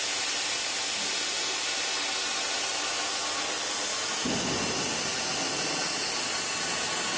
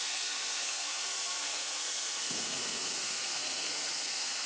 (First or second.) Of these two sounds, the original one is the first